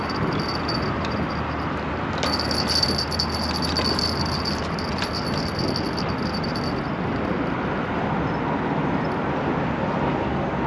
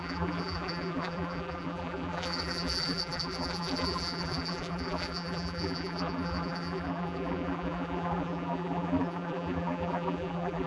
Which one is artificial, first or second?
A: second